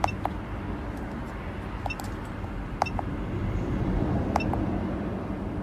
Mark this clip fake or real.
real